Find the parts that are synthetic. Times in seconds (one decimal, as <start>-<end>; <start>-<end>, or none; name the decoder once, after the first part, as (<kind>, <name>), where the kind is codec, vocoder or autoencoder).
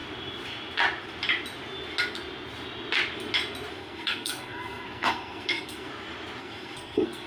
3.7-5.9 (codec, SNAC); 6.4-7.3